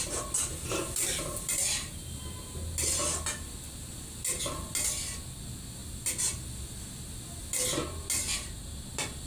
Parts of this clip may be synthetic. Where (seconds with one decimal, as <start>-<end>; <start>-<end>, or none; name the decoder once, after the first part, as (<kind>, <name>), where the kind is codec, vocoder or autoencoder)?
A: none